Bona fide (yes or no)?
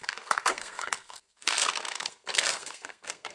no